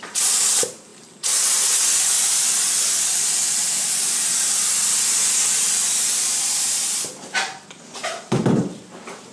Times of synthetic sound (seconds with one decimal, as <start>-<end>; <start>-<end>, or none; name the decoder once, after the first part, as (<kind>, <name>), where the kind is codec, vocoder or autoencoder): 3.1-5.2 (vocoder, BigVGAN v2); 8.0-8.8